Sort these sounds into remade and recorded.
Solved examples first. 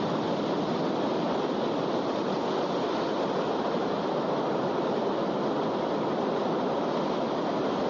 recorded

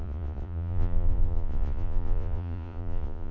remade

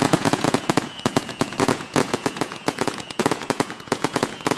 remade